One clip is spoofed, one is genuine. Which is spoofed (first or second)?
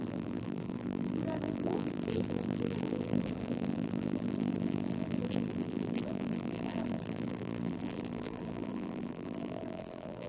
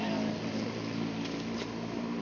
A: first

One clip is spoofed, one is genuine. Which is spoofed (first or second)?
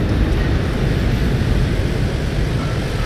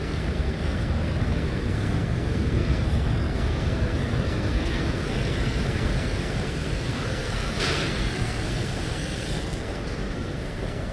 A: second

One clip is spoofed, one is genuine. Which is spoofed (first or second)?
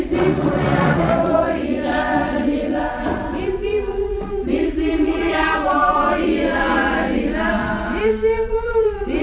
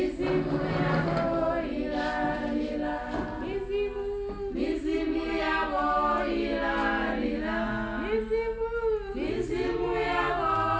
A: first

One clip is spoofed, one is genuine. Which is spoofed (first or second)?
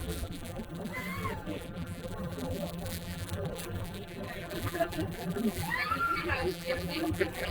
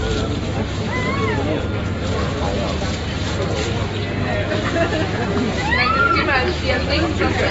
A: first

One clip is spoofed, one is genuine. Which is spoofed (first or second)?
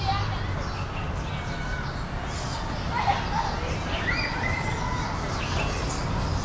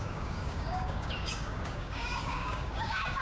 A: second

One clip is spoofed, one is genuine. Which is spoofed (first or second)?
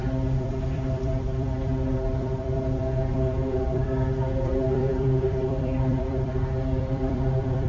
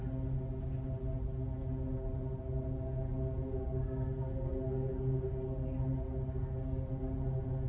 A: first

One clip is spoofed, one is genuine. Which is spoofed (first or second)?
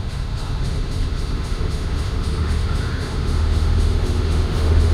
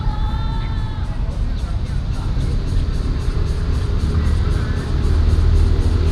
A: first